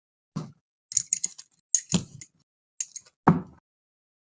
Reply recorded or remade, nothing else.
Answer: recorded